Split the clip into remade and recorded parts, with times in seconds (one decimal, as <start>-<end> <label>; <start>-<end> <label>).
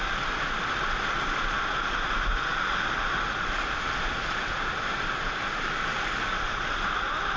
0.0-7.4 recorded